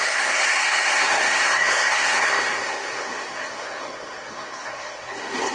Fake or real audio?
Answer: fake